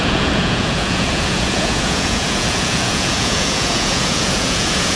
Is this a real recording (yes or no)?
no